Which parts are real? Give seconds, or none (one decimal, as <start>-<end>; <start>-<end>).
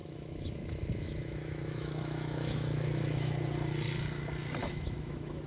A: 3.3-4.6